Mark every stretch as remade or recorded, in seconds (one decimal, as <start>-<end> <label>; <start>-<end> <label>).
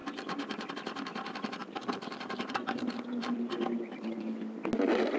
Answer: 0.0-1.6 recorded; 1.6-4.7 remade; 4.7-5.2 recorded